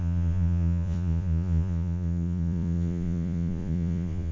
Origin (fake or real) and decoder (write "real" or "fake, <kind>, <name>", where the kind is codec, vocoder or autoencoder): fake, vocoder, Vocos